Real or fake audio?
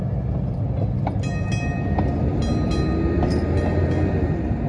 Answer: real